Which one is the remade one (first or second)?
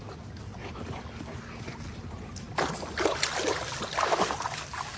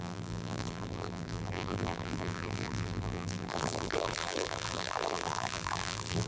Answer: second